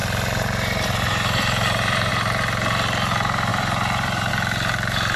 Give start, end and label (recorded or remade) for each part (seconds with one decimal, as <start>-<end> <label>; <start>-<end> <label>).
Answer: 0.0-2.1 remade; 2.1-3.5 recorded; 3.5-4.3 remade; 4.3-5.2 recorded